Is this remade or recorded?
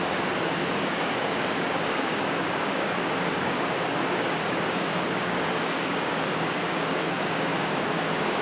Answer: remade